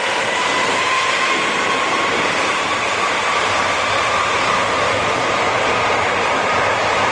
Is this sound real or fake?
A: fake